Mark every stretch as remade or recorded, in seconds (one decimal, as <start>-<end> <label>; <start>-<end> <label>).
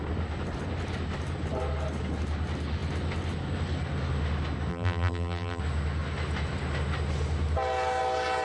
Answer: 0.0-4.7 recorded; 4.7-5.6 remade; 5.6-8.4 recorded